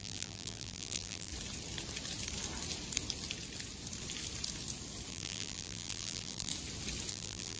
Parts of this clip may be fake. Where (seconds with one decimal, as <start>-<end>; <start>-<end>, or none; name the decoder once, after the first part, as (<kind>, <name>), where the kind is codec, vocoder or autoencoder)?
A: 0.0-1.3 (vocoder, BigVGAN v2); 5.1-6.5; 7.1-7.6

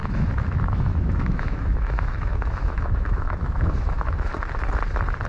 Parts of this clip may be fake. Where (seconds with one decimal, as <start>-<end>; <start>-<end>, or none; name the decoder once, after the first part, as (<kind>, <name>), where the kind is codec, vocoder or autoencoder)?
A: 0.0-4.3 (autoencoder, DAC-VAE)

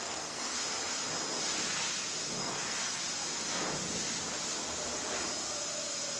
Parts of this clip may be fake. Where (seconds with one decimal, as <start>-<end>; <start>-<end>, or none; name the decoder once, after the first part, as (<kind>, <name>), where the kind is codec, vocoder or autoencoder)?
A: 0.0-0.6 (codec, SNAC); 2.4-3.0

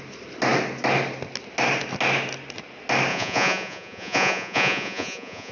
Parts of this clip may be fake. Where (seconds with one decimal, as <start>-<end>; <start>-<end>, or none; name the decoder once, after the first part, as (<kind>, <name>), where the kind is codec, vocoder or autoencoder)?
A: 3.1-5.5 (vocoder, Vocos)

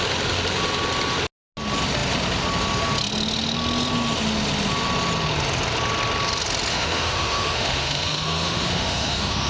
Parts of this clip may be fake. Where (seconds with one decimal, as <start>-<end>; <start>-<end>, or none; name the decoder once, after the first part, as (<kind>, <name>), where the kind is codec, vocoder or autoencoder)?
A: 6.7-9.5 (autoencoder, DAC-VAE)